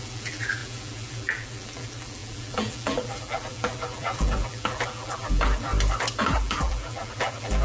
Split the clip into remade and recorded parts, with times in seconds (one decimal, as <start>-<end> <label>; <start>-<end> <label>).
0.0-5.7 remade; 5.7-6.2 recorded; 6.2-7.6 remade